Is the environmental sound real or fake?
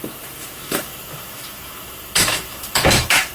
fake